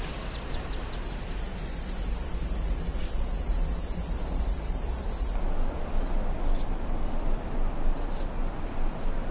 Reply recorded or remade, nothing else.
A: recorded